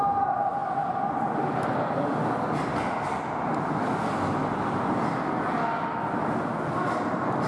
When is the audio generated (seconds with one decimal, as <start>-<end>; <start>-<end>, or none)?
none